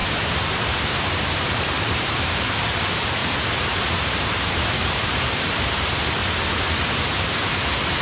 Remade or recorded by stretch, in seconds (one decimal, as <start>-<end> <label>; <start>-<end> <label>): 0.0-1.1 recorded; 1.1-6.2 remade; 6.2-6.7 recorded; 6.7-8.0 remade